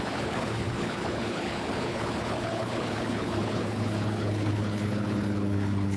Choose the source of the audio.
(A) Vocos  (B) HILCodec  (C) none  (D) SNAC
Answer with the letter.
B